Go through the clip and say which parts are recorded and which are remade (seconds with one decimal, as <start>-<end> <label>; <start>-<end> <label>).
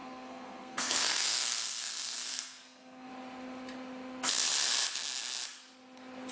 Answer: 0.0-3.1 remade; 3.1-6.3 recorded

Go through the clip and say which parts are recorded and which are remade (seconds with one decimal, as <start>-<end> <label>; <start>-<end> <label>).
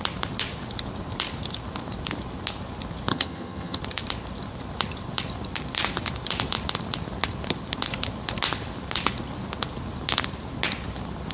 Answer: 0.0-3.1 recorded; 3.1-3.8 remade; 3.8-11.3 recorded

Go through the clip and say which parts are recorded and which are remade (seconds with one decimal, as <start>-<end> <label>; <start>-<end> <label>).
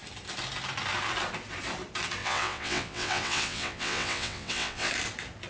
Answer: 0.0-2.2 recorded; 2.2-4.9 remade; 4.9-5.5 recorded